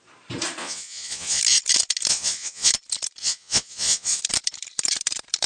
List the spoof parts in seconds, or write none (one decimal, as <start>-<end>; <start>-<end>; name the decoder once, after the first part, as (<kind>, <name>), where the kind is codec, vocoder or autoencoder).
0.6-1.4 (vocoder, Vocos); 2.1-2.7; 3.2-4.2